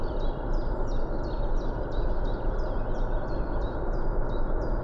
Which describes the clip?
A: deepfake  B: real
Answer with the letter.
B